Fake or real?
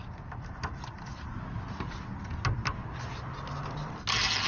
real